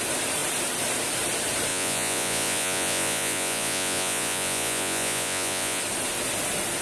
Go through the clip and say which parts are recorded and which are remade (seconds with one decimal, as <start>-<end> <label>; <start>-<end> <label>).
0.0-1.7 recorded; 1.7-5.8 remade; 5.8-6.8 recorded